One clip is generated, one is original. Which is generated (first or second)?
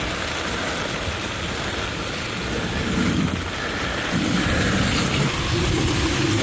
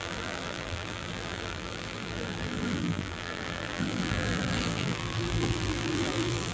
second